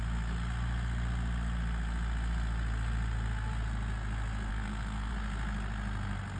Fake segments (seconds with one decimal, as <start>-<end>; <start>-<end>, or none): 4.5-5.1